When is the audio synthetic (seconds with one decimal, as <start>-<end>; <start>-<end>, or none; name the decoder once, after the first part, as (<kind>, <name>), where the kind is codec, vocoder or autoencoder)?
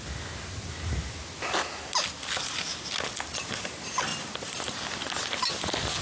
none